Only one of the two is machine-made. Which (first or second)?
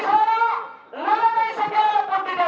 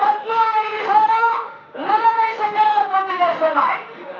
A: second